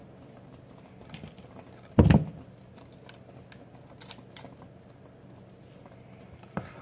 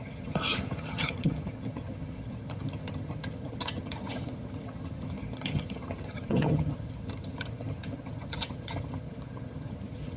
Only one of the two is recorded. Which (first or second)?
first